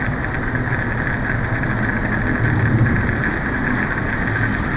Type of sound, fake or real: real